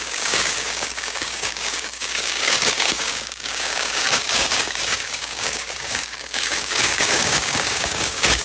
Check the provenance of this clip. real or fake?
fake